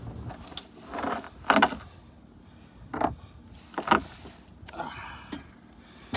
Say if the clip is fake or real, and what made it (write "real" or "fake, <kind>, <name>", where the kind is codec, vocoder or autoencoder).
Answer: real